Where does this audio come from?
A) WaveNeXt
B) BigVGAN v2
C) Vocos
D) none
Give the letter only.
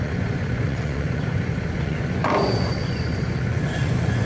C